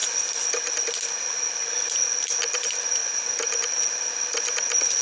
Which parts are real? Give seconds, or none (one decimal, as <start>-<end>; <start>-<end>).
0.0-5.0

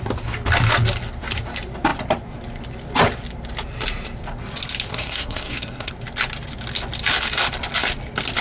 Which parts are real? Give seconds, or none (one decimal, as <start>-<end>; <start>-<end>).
0.0-4.9; 5.9-8.4

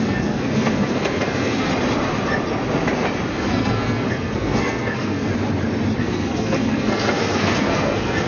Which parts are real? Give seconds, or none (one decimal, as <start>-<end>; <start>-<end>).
1.7-3.3; 5.3-6.0